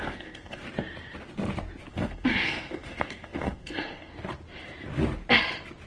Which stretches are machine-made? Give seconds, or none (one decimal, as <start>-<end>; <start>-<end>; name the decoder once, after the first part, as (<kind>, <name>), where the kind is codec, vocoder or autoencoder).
0.0-0.6 (codec, SNAC); 1.9-4.1